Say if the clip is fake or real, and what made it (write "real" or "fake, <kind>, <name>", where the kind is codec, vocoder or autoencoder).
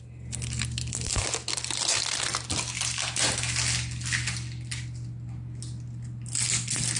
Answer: real